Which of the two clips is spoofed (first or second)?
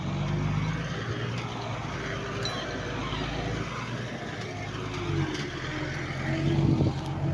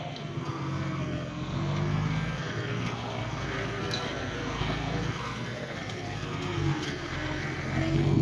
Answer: second